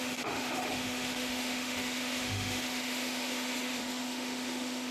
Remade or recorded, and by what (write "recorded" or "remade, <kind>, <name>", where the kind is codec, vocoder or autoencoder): remade, autoencoder, DAC-VAE